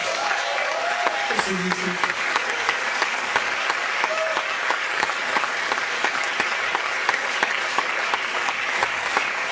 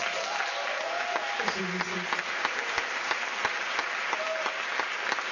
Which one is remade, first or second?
first